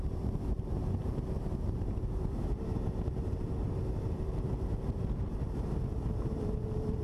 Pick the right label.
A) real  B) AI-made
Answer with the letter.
B